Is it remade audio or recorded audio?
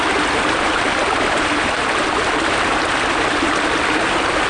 recorded